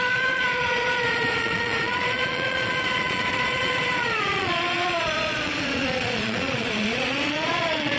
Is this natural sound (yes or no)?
no